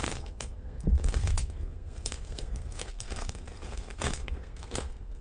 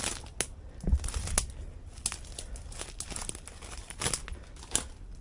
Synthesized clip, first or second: first